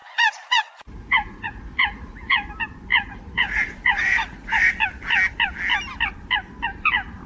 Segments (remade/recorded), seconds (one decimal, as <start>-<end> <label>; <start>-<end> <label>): 0.0-2.5 remade; 2.5-2.9 recorded; 2.9-4.7 remade; 4.7-7.3 recorded